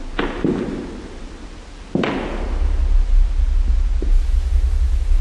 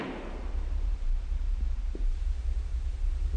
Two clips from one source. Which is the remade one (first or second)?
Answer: second